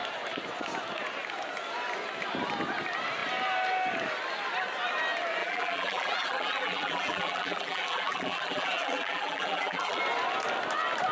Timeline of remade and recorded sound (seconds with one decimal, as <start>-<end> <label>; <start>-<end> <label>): 0.0-5.4 recorded; 5.4-10.0 remade; 10.0-11.1 recorded